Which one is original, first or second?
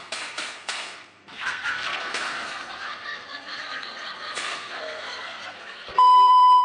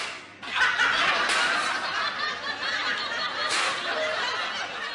second